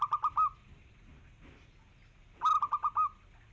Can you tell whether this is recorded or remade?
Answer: recorded